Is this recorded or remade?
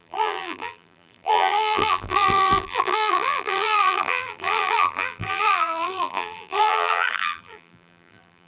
remade